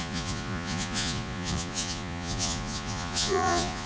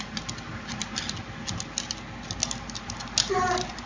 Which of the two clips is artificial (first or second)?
first